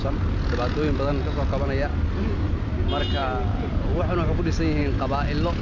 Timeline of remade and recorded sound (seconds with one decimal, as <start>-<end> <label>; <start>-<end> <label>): 0.0-5.6 recorded